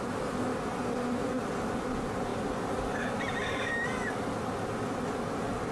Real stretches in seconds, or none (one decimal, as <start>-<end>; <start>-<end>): 0.0-2.3; 4.0-5.7